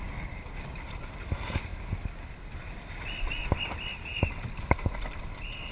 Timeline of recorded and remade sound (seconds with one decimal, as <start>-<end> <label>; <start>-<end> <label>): 0.0-5.7 recorded